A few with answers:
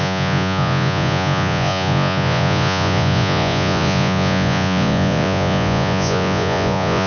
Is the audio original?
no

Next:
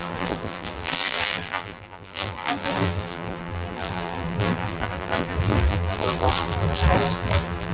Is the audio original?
no